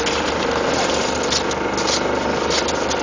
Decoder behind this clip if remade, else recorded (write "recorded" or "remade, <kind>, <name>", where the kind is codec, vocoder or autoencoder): recorded